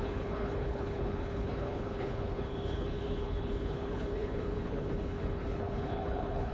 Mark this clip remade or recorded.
remade